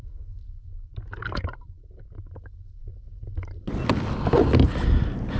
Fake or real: real